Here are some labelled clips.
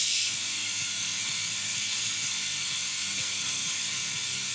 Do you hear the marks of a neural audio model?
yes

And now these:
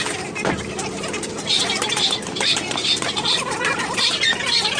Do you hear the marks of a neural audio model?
yes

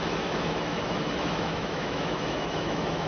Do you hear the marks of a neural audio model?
yes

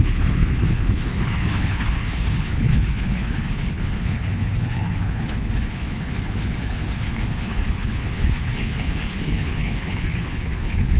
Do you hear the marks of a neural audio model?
yes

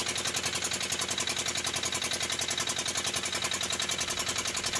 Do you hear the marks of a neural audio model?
no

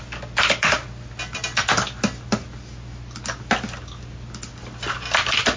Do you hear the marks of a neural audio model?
no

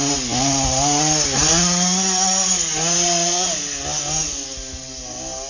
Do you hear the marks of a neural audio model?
no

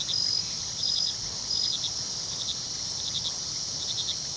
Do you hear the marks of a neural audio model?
no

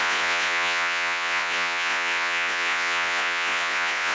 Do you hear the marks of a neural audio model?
yes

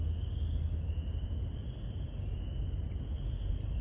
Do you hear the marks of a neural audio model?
no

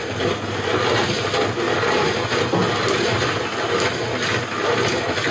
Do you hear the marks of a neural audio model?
no